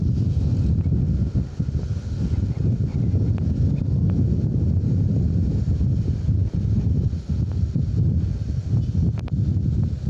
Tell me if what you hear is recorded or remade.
recorded